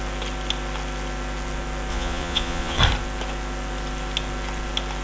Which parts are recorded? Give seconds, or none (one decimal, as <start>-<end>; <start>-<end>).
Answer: 0.0-1.9; 2.8-5.0